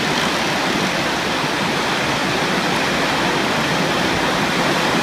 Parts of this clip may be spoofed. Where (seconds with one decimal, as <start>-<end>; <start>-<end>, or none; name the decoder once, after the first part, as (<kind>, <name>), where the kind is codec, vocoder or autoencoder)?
none